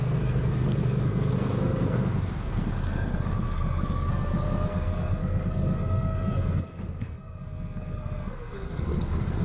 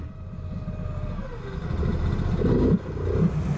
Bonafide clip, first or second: second